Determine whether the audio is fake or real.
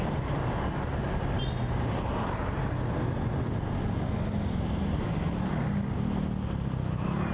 real